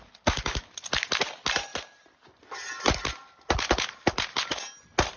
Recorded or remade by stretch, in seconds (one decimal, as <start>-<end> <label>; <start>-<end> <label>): 0.0-5.2 recorded